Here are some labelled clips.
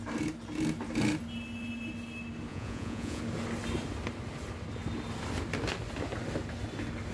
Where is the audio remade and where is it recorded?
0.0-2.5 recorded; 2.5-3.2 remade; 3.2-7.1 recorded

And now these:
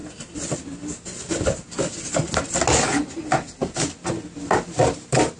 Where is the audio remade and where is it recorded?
0.0-5.4 recorded

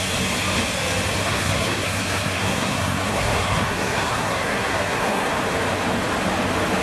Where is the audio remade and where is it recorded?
0.0-1.2 recorded; 1.2-5.3 remade; 5.3-6.8 recorded

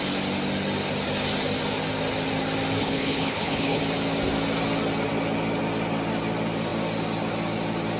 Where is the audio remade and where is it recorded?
0.0-2.8 recorded; 2.8-3.8 remade; 3.8-8.0 recorded